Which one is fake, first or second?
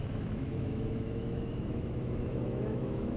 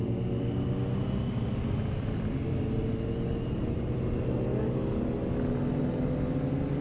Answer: first